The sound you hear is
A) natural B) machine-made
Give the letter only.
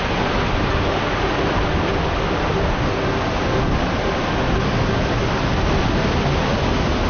A